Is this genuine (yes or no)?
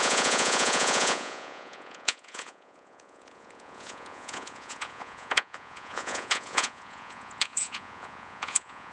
no